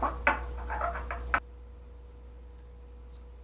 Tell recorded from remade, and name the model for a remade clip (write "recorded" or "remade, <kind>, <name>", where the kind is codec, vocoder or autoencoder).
recorded